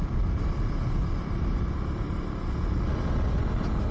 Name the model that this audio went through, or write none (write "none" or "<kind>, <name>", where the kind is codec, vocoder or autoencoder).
none